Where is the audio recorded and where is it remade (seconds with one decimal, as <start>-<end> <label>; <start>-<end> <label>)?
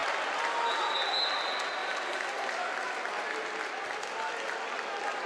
0.0-5.3 recorded